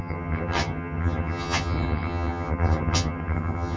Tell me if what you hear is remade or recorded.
remade